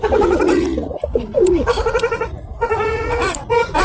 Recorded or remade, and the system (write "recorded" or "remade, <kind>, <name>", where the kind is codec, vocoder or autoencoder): remade, vocoder, Vocos